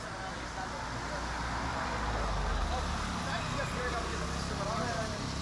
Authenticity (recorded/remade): recorded